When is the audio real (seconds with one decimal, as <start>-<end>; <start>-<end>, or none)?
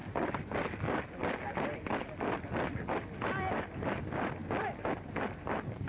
0.0-5.9